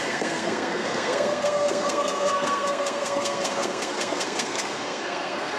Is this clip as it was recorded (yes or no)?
no